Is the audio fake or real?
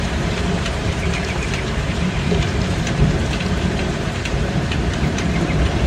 fake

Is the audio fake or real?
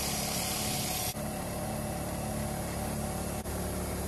real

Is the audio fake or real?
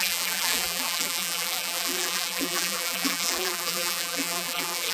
fake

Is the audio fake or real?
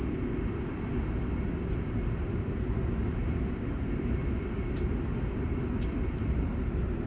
real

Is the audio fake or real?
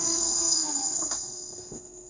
fake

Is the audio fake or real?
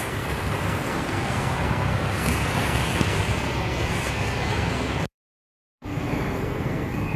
fake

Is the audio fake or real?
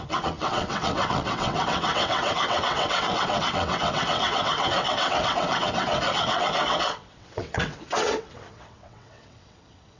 fake